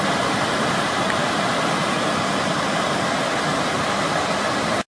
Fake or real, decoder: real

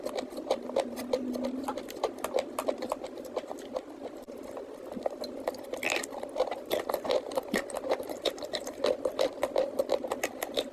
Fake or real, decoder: real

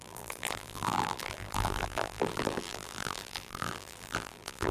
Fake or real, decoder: fake, vocoder, BigVGAN v2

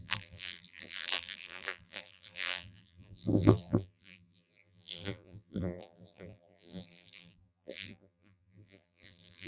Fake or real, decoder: fake, vocoder, BigVGAN v2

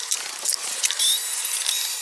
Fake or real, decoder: real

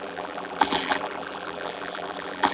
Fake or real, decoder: fake, vocoder, BigVGAN v2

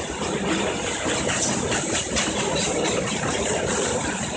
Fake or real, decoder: real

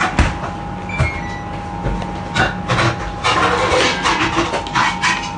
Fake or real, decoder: real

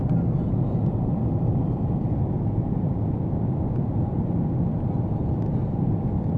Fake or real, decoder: real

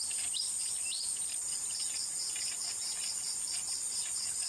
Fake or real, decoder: fake, vocoder, BigVGAN v2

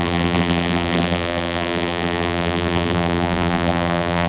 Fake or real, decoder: fake, vocoder, BigVGAN v2